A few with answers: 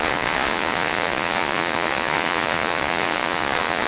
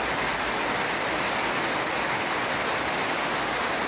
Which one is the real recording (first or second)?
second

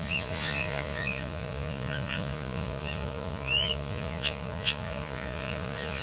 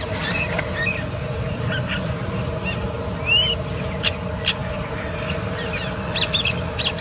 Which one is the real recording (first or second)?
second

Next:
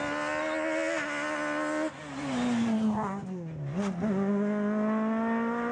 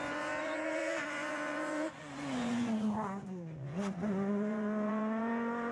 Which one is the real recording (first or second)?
first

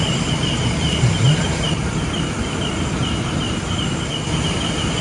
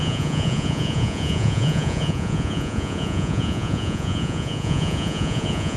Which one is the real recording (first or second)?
first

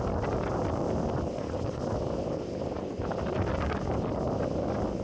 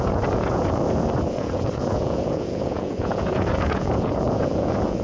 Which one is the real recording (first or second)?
first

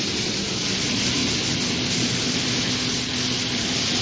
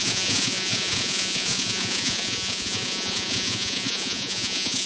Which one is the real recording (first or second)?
first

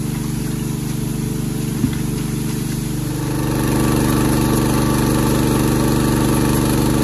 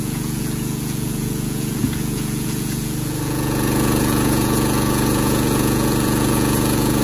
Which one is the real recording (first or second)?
first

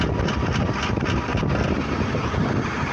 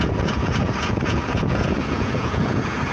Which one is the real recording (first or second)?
first